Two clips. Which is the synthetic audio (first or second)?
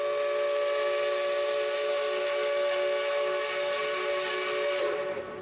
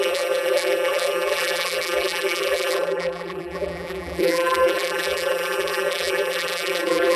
second